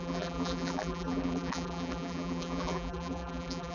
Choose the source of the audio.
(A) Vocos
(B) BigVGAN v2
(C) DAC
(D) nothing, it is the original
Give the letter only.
B